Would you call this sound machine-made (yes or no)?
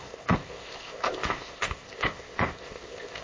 yes